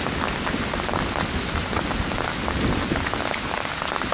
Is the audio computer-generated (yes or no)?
no